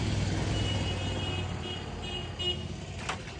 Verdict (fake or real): real